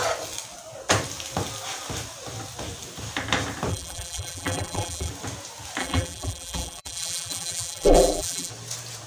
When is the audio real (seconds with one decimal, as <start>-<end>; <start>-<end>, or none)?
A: 0.0-3.7; 5.1-5.8; 8.5-9.1